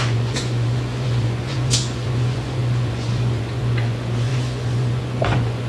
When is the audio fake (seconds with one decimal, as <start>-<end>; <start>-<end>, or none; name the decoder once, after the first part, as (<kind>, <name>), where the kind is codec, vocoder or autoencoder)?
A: 0.0-5.7 (vocoder, Vocos)